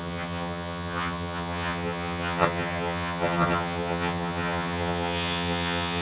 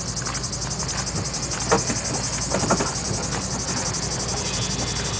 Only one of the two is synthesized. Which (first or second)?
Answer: first